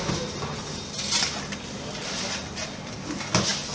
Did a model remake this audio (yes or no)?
no